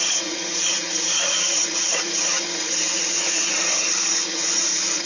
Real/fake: fake